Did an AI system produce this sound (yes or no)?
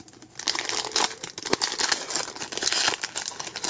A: no